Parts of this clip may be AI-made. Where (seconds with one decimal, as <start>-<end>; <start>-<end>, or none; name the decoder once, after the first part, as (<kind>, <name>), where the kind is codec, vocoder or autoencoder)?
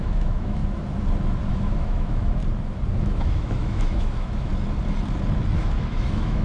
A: 0.0-0.6 (autoencoder, DAC-VAE); 1.5-2.4; 3.0-4.5; 5.6-6.4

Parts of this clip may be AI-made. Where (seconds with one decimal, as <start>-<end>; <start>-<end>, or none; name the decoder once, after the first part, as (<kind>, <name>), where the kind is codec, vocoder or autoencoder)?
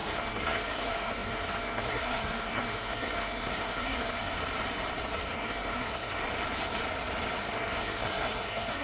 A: 0.0-4.4 (codec, SNAC); 5.1-6.2; 7.4-8.8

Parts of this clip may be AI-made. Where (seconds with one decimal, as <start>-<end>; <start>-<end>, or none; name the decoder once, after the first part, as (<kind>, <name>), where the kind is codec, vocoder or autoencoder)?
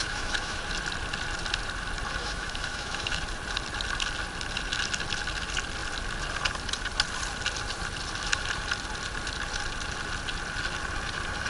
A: 0.0-0.6 (autoencoder, DAC-VAE); 2.2-3.2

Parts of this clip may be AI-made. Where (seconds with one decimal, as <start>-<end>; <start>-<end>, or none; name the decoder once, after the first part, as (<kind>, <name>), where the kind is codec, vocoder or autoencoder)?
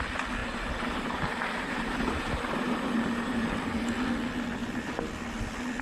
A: 0.4-3.9 (vocoder, BigVGAN v2)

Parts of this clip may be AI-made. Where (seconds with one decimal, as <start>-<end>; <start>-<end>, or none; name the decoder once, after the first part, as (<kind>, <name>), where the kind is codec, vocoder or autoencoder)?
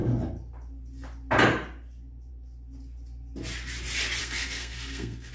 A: 4.2-5.3 (codec, SNAC)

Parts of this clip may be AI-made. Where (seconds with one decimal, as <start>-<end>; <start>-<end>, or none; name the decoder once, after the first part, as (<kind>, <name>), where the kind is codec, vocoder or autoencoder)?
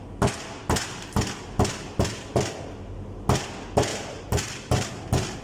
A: 3.9-4.7 (vocoder, BigVGAN v2)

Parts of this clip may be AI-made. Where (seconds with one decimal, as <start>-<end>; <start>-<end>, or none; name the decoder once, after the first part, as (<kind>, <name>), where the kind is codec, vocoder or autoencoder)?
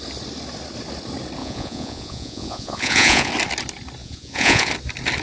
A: 1.4-3.3 (vocoder, Vocos); 4.0-4.7